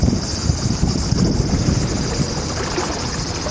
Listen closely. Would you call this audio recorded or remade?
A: recorded